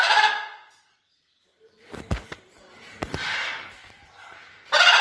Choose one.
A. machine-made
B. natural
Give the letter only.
A